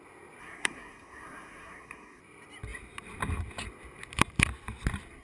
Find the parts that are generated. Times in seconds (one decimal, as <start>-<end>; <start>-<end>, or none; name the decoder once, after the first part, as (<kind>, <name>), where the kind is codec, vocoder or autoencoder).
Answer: 0.4-2.2 (codec, SNAC)